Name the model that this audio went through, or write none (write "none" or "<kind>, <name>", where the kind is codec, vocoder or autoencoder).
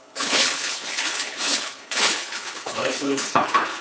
codec, HILCodec